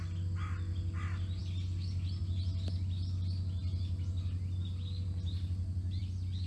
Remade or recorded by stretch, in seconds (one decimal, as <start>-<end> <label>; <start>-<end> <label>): 0.0-6.5 recorded